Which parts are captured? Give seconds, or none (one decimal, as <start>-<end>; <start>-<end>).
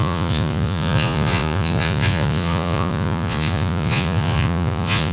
none